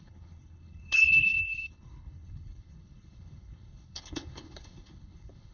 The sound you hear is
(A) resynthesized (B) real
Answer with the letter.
A